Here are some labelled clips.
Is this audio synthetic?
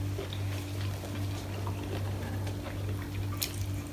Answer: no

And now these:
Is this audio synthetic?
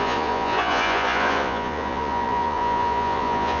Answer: yes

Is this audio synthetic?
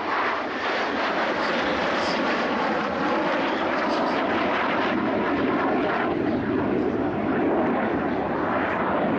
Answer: yes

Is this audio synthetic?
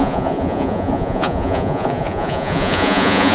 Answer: yes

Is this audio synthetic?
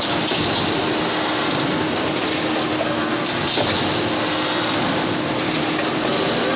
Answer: no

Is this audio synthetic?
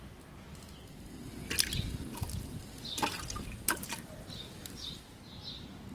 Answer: no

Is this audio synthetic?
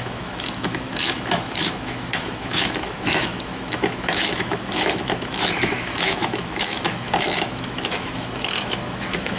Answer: yes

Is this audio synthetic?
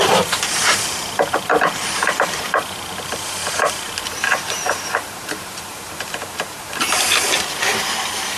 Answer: yes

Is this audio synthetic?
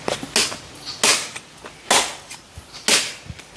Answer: no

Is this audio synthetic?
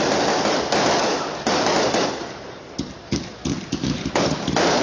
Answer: yes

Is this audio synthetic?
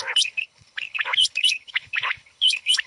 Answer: yes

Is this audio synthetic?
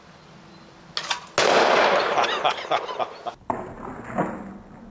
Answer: no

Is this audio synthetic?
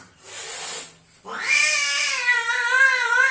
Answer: no